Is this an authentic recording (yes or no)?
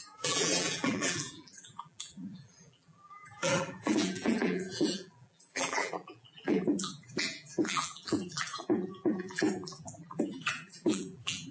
no